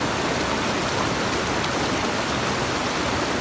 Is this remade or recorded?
recorded